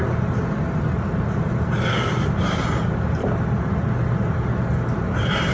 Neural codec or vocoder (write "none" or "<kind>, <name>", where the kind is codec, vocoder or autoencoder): none